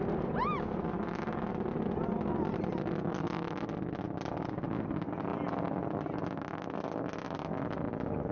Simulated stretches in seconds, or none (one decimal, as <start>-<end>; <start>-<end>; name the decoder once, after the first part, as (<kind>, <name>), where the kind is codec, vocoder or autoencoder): none